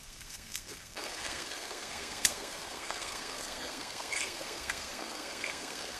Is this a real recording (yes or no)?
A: no